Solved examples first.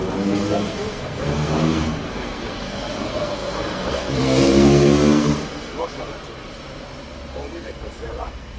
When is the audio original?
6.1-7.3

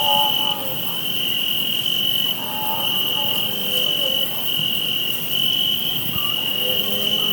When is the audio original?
0.0-0.6; 1.7-3.6; 6.5-7.3

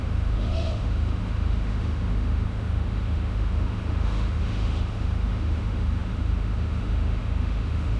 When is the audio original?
none

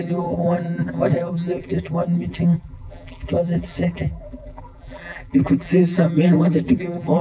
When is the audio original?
none

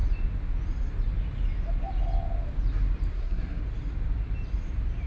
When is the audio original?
0.0-3.1; 3.6-5.1

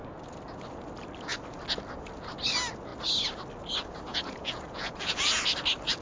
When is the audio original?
0.0-4.1; 5.4-6.0

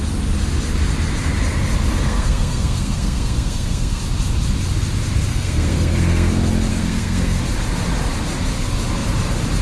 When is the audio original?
0.0-1.9; 4.0-5.3; 6.3-6.7; 7.4-9.6

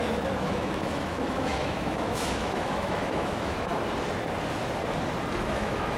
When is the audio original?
3.7-5.4